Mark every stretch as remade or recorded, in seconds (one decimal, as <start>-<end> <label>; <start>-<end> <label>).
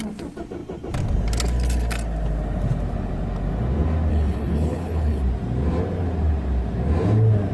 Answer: 0.0-4.1 recorded; 4.1-5.2 remade; 5.2-7.5 recorded